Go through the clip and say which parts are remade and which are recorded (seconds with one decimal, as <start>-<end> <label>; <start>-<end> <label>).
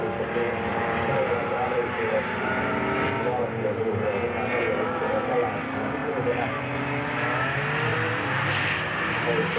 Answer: 0.0-0.7 recorded; 0.7-2.2 remade; 2.2-6.0 recorded; 6.0-6.6 remade; 6.6-9.6 recorded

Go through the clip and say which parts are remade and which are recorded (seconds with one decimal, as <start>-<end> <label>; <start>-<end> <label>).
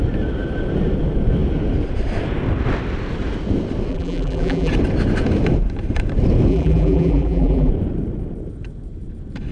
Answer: 0.0-3.9 recorded; 3.9-4.7 remade; 4.7-6.5 recorded; 6.5-7.7 remade; 7.7-9.5 recorded